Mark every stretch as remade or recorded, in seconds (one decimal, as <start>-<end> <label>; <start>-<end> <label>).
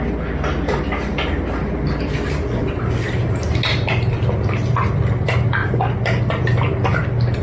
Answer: 0.0-7.4 recorded